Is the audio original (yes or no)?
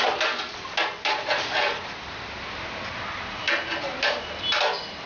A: yes